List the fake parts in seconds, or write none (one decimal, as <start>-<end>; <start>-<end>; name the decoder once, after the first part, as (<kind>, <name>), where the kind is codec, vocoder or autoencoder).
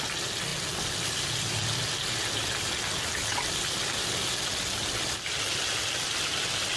none